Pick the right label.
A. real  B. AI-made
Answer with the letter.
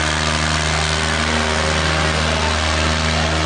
A